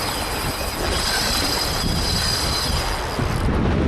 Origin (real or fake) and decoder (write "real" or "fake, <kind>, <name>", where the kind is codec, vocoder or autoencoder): real